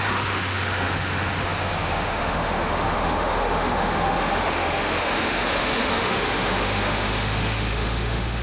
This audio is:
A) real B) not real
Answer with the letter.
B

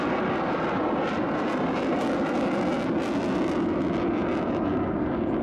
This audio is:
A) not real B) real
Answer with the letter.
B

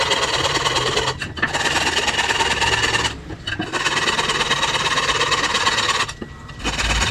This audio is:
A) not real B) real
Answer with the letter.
B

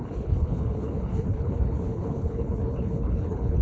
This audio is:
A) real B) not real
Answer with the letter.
B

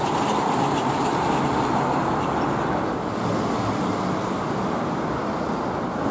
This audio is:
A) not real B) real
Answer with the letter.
B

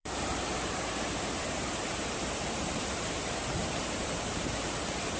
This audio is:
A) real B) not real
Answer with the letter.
B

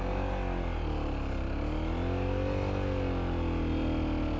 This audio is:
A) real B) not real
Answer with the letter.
A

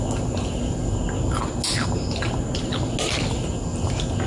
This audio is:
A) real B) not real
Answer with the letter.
A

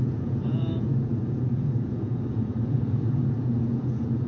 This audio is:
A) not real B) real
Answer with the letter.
A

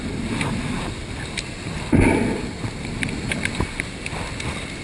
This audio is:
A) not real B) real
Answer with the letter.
B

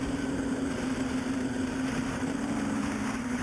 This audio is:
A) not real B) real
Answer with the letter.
A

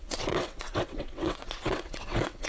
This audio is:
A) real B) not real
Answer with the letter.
B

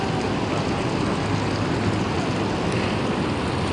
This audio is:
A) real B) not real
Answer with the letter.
A